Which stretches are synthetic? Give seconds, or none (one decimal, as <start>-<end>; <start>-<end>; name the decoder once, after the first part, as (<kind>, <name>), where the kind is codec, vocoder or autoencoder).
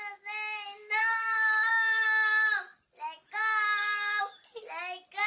1.0-1.7 (codec, SNAC)